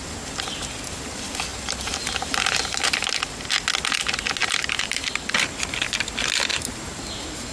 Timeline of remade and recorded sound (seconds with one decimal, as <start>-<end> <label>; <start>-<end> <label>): 0.0-1.5 recorded; 1.5-3.1 remade; 3.1-4.4 recorded; 4.4-5.1 remade; 5.1-6.5 recorded; 6.5-7.5 remade